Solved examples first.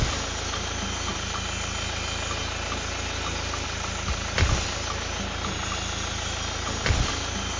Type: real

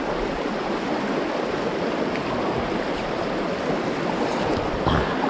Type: real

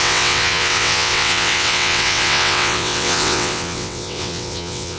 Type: fake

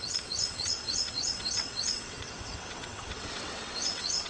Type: fake